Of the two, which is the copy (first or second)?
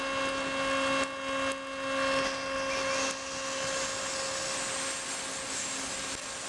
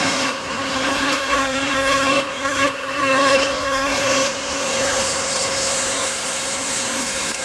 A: second